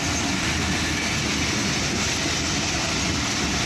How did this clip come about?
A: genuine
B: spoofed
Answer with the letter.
A